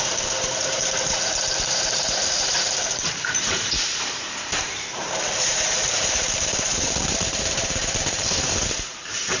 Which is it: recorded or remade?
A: remade